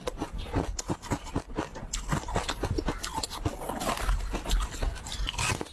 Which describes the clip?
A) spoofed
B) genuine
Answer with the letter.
B